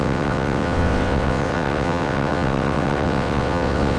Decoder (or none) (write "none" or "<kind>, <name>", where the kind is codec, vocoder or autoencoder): vocoder, WaveNeXt